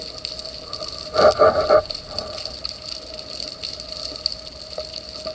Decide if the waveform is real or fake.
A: real